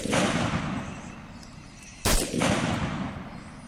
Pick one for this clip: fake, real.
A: real